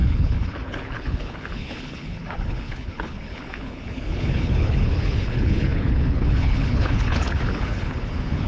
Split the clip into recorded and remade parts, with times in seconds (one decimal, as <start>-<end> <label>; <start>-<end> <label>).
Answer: 0.0-8.5 remade